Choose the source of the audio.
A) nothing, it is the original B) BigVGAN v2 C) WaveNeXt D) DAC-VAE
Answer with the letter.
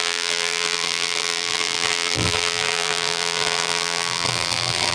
B